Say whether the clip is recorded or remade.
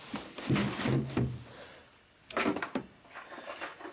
recorded